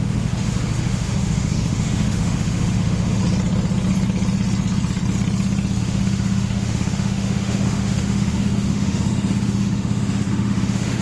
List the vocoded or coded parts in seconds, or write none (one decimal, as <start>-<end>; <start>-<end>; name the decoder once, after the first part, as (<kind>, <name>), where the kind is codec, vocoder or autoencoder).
0.0-3.2 (autoencoder, DAC-VAE); 5.8-11.0